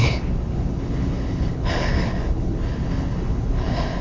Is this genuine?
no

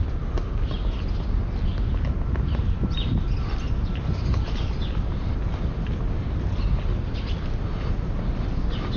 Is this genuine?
yes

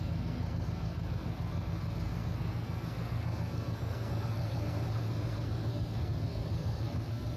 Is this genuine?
no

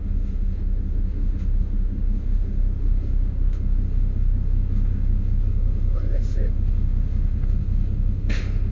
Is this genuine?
no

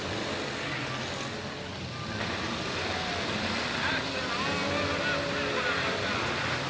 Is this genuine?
yes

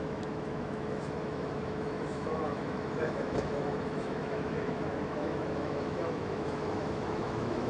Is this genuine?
no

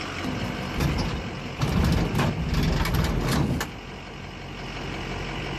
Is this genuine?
yes